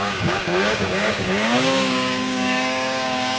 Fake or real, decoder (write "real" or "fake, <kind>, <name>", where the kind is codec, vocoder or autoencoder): fake, codec, DAC